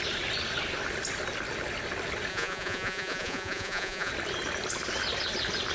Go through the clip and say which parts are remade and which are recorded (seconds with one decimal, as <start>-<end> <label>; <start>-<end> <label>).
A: 0.0-2.3 recorded; 2.3-4.1 remade; 4.1-5.7 recorded